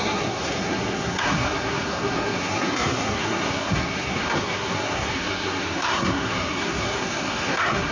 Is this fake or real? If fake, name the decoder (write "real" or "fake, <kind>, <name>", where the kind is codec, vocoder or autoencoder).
fake, codec, SNAC